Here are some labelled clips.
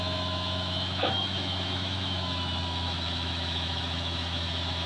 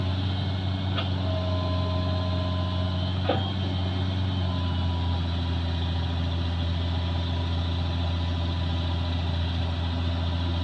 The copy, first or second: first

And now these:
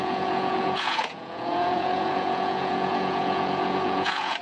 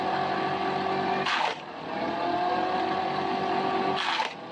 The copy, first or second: first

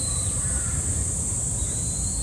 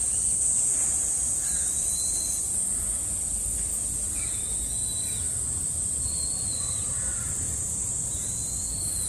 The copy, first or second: first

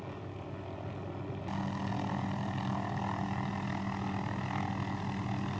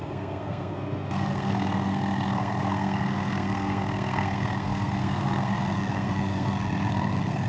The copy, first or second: second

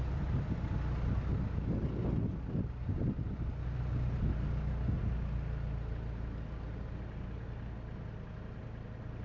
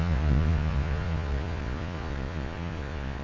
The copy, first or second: second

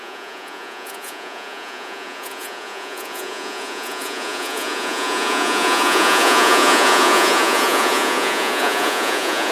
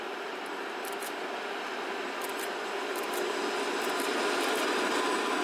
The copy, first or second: first